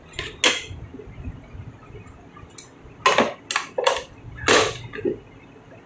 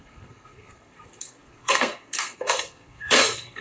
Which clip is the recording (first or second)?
first